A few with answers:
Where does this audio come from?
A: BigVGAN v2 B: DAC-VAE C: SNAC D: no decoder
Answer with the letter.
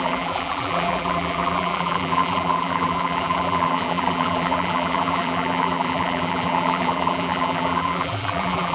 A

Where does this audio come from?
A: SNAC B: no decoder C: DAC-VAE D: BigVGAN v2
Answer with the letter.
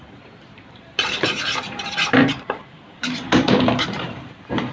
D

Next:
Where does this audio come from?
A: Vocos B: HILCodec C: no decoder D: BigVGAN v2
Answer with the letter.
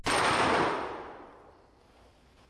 C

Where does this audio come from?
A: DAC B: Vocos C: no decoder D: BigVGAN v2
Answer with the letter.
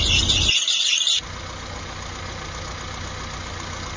C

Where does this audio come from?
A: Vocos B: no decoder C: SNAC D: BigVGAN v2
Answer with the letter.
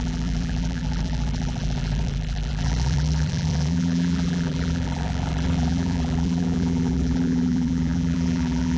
D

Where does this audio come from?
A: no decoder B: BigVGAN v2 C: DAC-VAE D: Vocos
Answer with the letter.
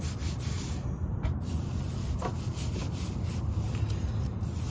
B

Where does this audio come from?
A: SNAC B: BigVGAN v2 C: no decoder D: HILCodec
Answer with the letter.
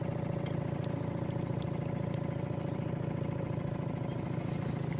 B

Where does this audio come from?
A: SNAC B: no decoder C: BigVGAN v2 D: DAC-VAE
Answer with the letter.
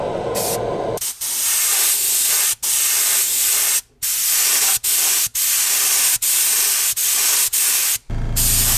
B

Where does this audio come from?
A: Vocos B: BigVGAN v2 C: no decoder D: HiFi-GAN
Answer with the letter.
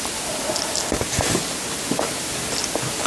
C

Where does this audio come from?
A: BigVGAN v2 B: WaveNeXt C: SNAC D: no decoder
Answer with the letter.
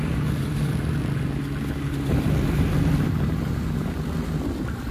D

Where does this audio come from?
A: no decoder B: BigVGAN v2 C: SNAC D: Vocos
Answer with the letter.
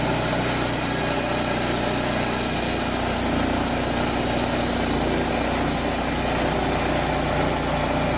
A